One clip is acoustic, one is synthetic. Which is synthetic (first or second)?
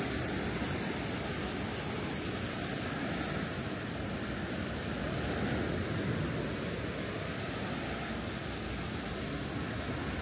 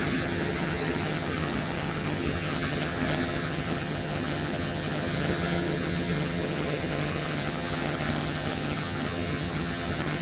second